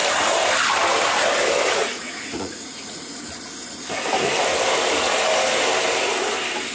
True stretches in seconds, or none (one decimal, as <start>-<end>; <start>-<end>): 0.0-1.8; 3.2-6.7